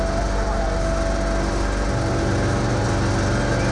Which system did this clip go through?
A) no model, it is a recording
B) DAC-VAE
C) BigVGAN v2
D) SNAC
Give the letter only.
A